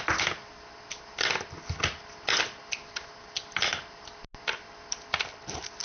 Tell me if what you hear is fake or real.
real